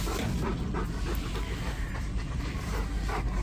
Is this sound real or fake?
real